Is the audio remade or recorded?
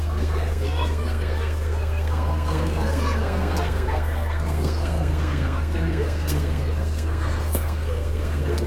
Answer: remade